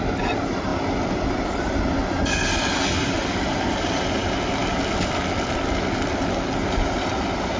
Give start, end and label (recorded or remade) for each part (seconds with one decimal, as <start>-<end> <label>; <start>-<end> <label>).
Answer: 0.0-7.6 recorded